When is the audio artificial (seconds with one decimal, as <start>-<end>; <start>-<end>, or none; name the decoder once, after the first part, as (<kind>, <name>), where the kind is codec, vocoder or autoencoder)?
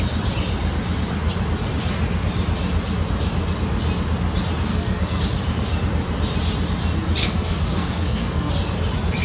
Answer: 4.7-5.2 (codec, SNAC); 7.2-8.5